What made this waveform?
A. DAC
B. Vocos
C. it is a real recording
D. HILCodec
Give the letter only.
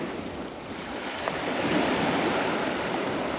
C